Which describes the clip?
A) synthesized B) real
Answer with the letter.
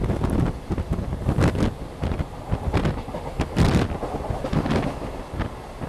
B